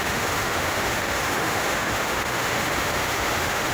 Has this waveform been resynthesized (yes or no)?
yes